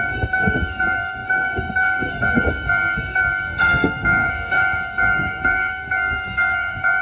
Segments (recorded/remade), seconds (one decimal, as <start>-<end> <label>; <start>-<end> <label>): 0.0-7.0 remade